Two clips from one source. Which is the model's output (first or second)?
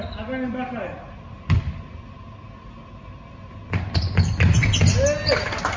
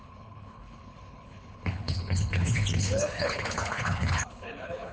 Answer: second